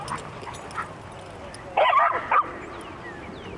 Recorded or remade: recorded